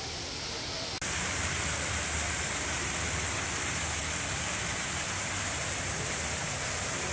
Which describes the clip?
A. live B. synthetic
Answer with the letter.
A